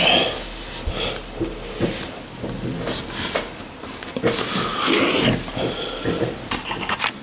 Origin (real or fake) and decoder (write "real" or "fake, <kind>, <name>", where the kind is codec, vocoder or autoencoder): real